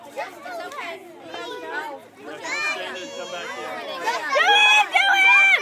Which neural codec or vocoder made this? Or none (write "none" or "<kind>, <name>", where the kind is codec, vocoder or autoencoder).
none